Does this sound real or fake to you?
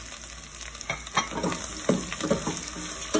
real